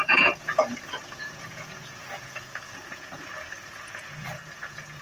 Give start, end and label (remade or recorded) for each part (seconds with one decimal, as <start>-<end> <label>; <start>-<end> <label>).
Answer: 0.0-5.0 remade